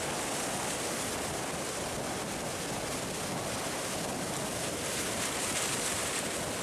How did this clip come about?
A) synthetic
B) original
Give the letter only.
B